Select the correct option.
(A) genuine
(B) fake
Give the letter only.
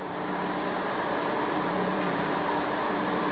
B